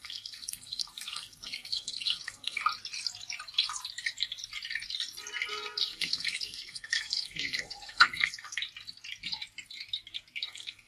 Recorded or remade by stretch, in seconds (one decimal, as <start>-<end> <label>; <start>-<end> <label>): 0.0-2.6 remade; 2.6-5.5 recorded; 5.5-8.6 remade; 8.6-10.4 recorded; 10.4-10.9 remade